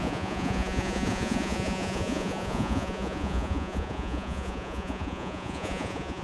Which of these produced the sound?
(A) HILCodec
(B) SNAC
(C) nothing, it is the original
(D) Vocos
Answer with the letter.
D